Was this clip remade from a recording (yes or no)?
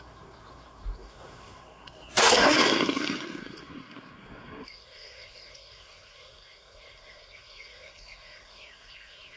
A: yes